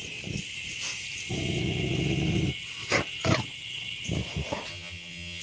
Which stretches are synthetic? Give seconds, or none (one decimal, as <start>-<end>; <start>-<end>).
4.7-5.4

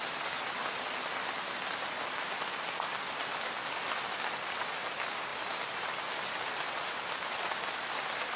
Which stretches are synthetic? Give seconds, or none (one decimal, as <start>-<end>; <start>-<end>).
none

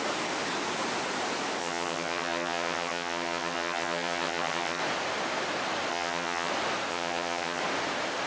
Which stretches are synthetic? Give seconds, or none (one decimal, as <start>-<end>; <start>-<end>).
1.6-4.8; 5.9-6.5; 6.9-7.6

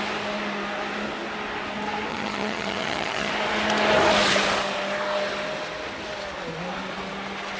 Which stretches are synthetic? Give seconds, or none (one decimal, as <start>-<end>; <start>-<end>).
2.1-3.3

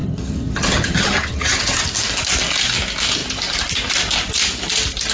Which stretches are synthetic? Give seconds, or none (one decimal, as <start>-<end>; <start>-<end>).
0.0-1.8